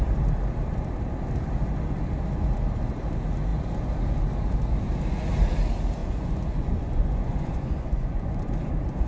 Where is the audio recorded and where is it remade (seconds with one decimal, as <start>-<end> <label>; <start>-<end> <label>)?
0.0-6.0 recorded; 6.0-8.5 remade; 8.5-9.1 recorded